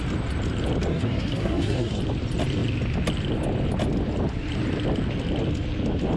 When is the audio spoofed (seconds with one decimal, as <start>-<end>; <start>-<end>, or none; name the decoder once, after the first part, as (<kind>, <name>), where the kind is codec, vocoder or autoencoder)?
0.9-2.0 (codec, SNAC)

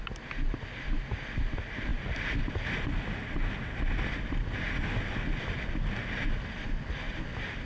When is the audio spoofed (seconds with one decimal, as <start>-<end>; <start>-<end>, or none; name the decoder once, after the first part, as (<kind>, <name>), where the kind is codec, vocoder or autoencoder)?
none

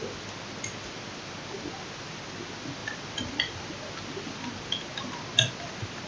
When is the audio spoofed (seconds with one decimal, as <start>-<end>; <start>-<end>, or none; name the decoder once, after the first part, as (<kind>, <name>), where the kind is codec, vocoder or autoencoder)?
2.8-3.6 (vocoder, BigVGAN v2)

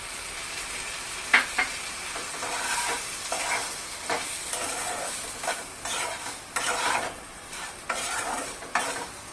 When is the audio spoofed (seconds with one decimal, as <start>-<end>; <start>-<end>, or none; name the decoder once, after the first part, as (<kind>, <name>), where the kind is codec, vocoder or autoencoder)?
4.4-8.4 (vocoder, BigVGAN v2)